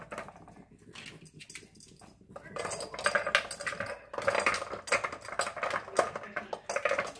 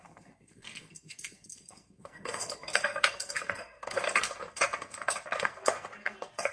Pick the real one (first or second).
first